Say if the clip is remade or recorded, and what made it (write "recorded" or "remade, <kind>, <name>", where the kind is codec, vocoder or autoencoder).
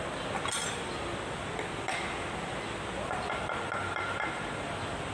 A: recorded